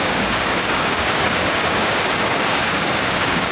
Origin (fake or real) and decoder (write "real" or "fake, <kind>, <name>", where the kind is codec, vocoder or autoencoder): fake, codec, DAC